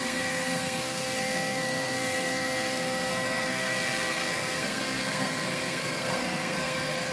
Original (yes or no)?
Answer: no